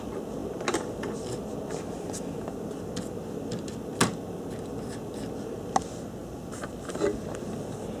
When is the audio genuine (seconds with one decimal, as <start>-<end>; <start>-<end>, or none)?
0.0-8.0